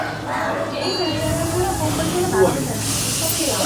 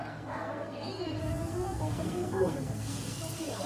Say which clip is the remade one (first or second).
second